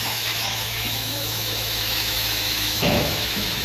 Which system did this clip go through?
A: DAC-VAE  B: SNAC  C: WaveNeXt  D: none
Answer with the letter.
A